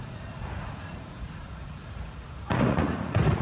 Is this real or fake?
fake